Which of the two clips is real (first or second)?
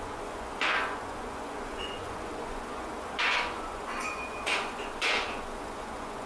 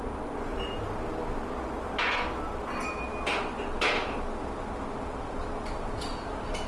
second